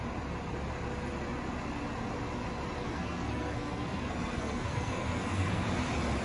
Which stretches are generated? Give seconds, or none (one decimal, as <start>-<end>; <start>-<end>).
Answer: 2.8-5.6